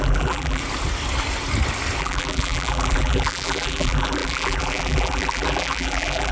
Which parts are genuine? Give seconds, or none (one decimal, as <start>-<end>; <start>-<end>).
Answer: 0.6-2.0